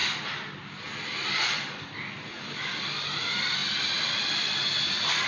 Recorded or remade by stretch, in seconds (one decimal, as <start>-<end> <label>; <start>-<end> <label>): 0.0-5.3 recorded